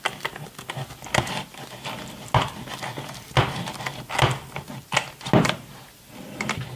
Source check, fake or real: real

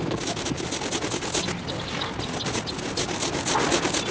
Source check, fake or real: real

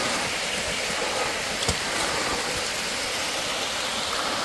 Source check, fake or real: real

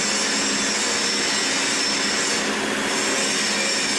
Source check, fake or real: real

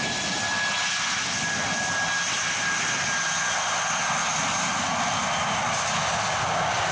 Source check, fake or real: real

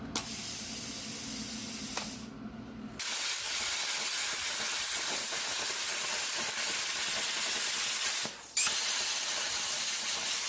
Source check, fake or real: real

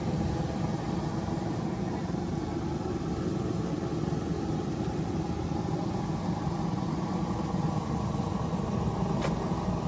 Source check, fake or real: real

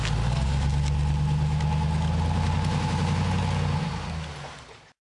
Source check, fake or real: real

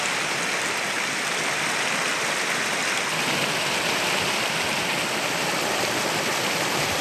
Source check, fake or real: real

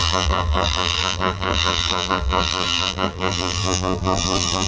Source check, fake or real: fake